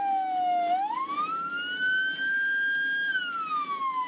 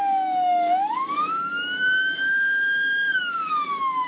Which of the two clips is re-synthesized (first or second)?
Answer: second